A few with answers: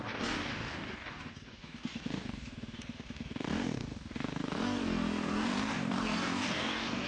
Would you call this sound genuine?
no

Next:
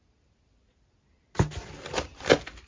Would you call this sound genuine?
yes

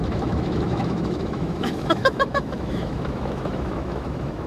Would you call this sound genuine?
no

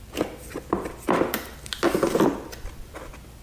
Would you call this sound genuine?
no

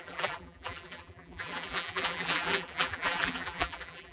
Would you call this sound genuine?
no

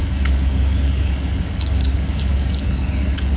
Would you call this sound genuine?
no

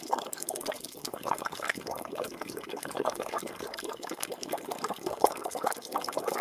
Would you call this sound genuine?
no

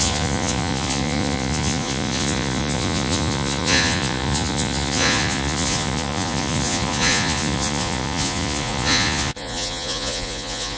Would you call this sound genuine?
no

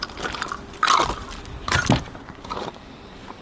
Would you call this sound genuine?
yes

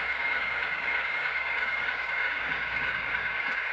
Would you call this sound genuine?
no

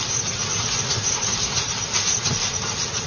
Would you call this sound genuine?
yes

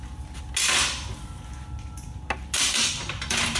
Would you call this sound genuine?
yes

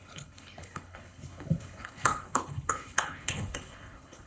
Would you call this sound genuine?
no